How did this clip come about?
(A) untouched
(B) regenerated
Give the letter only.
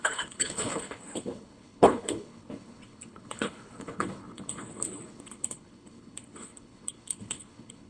B